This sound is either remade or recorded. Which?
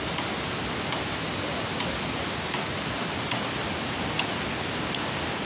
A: recorded